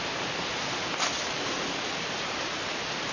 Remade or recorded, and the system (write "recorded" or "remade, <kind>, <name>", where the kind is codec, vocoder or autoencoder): recorded